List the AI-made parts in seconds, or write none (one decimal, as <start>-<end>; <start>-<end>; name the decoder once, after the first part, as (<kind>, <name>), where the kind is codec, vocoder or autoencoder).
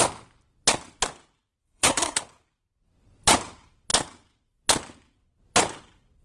1.6-2.2 (codec, SNAC)